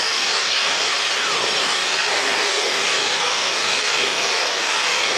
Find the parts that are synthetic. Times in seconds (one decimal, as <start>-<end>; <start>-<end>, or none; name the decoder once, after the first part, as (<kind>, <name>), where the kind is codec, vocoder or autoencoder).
0.0-0.9 (codec, DAC); 1.6-5.2